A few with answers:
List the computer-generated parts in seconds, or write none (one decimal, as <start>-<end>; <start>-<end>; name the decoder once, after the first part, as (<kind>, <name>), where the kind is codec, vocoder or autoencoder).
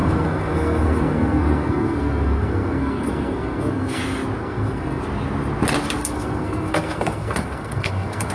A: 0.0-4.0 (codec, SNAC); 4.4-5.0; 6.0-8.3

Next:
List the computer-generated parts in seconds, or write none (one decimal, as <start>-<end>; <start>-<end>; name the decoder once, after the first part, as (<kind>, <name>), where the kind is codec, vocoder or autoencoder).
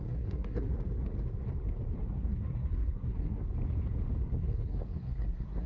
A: 0.0-0.7 (codec, SNAC); 2.0-3.4; 4.2-5.7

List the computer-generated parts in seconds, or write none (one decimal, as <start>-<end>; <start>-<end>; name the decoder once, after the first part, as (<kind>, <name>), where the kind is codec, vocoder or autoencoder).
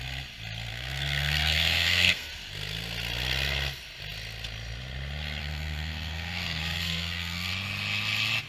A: 0.7-2.3 (codec, SNAC); 5.4-7.5